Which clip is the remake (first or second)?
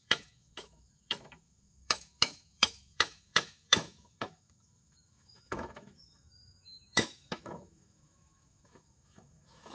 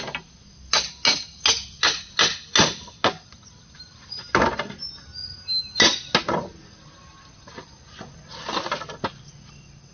first